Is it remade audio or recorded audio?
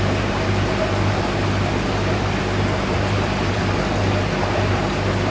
remade